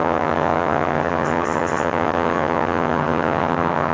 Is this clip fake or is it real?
fake